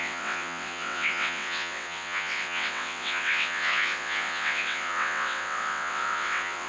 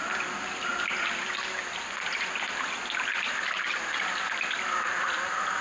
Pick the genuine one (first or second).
second